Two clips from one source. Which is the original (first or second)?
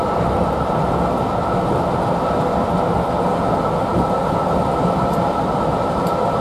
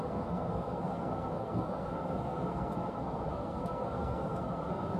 first